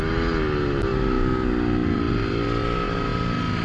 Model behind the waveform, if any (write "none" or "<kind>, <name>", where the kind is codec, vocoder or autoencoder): none